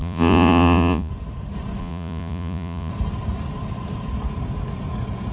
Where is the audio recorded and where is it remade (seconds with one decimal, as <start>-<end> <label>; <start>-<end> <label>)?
0.0-1.1 remade; 1.1-1.8 recorded; 1.8-2.9 remade; 2.9-5.3 recorded